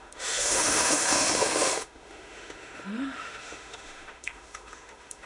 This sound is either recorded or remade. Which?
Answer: remade